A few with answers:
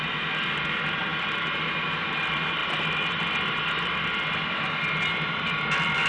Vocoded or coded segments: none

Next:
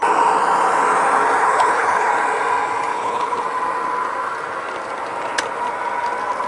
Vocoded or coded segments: 1.4-2.1 (codec, HILCodec); 2.9-3.4

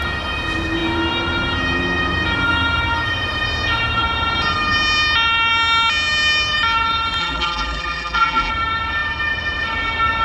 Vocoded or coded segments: 7.2-8.5 (vocoder, BigVGAN v2)

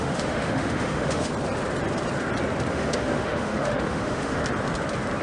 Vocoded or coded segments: 0.0-1.3 (autoencoder, DAC-VAE); 2.7-4.4

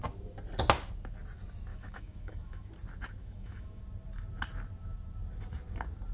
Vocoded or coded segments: 1.7-2.7 (autoencoder, DAC-VAE); 3.2-3.8

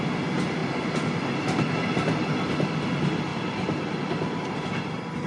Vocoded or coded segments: none

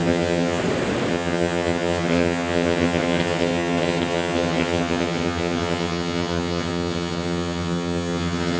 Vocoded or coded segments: 0.0-0.6 (vocoder, HiFi-GAN); 1.1-8.6

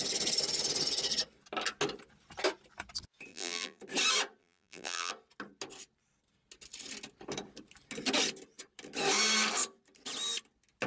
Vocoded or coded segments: 3.3-3.8 (vocoder, BigVGAN v2); 4.4-5.1